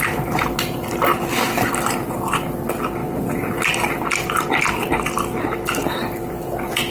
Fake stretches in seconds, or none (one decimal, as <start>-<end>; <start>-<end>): 3.0-4.7; 6.0-6.9